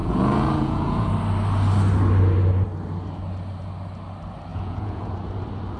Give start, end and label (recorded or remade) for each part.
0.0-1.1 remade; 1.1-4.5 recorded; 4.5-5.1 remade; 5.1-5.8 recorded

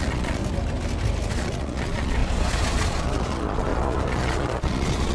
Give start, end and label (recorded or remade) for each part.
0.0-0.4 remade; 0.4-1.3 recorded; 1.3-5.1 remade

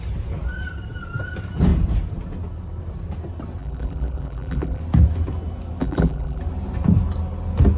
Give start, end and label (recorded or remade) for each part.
0.0-3.6 recorded; 3.6-4.8 remade; 4.8-5.8 recorded; 5.8-6.4 remade; 6.4-7.8 recorded